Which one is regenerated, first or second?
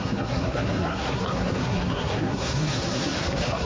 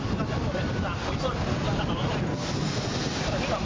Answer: first